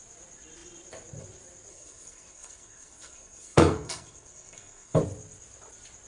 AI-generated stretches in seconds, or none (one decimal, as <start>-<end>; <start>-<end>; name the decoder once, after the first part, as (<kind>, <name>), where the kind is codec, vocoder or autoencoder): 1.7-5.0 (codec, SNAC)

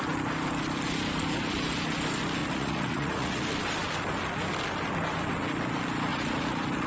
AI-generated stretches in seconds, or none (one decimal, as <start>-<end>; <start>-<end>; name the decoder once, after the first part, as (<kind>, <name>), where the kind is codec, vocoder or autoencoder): 2.4-3.4 (vocoder, Vocos); 6.1-6.9

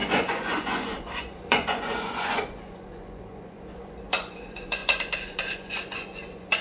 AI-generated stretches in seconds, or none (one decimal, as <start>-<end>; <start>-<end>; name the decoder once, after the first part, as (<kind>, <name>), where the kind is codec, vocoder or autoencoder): 0.0-6.6 (vocoder, Vocos)

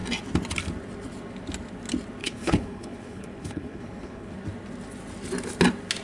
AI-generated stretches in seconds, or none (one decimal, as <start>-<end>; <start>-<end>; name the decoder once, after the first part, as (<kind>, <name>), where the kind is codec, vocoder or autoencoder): 2.2-4.3 (codec, HILCodec)